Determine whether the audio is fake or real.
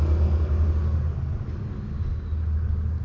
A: real